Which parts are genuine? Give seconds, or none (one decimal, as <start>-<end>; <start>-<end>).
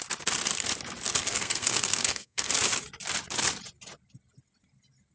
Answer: 0.0-1.3; 2.5-5.1